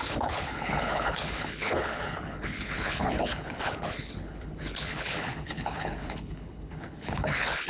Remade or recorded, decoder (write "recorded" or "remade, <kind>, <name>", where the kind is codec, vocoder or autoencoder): remade, codec, HILCodec